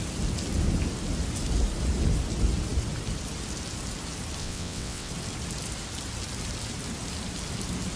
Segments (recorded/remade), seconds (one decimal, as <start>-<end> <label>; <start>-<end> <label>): 0.0-4.4 recorded; 4.4-5.1 remade; 5.1-8.0 recorded